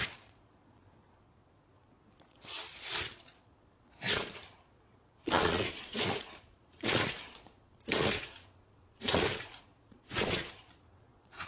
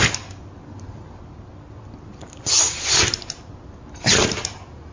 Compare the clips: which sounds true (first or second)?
second